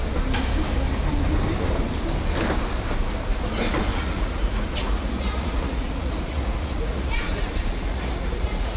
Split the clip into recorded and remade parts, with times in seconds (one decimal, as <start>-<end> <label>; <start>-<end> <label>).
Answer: 0.0-3.9 recorded; 3.9-8.8 remade